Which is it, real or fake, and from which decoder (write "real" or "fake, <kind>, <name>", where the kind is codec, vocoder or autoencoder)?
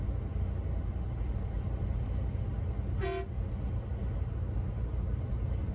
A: real